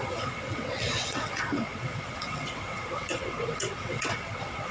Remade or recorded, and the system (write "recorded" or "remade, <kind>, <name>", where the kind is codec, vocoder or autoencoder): remade, vocoder, WaveNeXt